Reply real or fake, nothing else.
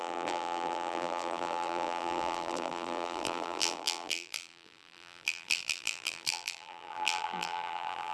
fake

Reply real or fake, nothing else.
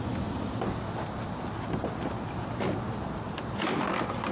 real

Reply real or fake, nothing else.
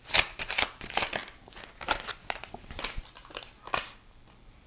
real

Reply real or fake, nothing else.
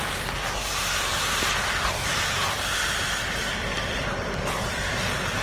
fake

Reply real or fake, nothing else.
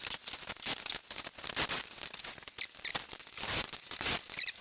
real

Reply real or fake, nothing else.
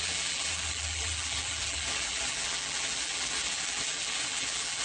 fake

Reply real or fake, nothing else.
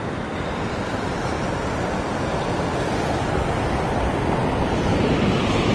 real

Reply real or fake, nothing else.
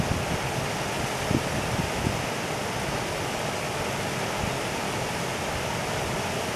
real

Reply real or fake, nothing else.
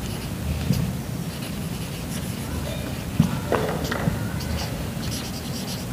real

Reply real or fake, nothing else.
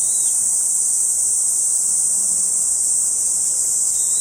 fake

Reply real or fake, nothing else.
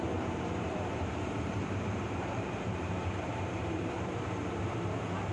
fake